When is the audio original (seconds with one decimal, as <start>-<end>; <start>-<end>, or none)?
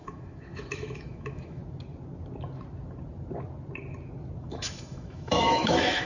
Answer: 1.6-4.5